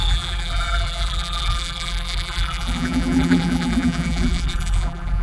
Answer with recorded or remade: remade